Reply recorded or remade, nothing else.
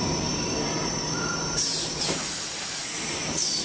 remade